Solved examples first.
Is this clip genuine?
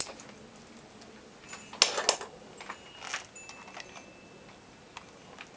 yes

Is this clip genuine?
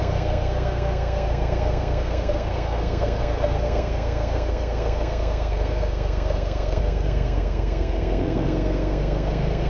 no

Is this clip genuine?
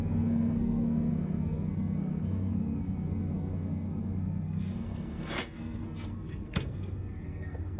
no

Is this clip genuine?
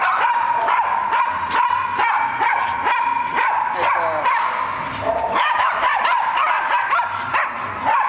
yes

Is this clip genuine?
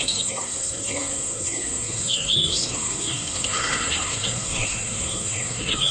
no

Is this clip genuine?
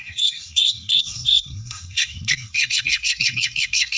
no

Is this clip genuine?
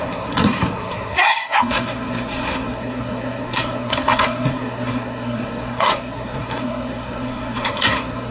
no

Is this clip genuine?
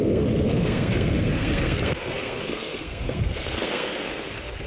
no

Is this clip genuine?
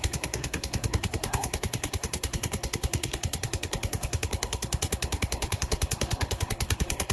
no